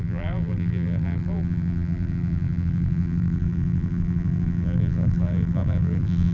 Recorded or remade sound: remade